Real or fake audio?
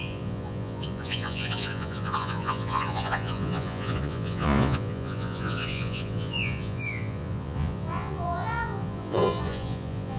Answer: fake